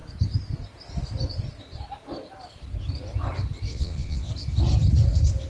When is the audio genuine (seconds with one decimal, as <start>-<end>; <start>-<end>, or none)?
0.0-3.7; 4.3-5.5